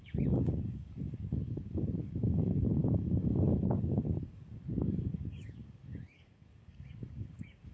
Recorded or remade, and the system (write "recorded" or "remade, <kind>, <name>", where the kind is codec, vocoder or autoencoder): remade, codec, DAC